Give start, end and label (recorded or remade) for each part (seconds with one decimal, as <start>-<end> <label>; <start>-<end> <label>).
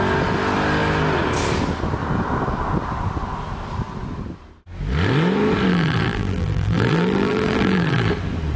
0.0-5.7 recorded; 5.7-8.1 remade; 8.1-8.6 recorded